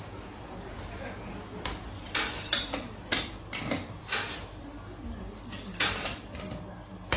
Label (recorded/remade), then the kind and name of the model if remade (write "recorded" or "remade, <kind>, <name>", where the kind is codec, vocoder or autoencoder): recorded